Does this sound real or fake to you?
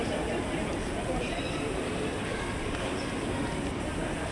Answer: real